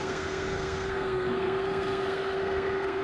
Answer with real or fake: fake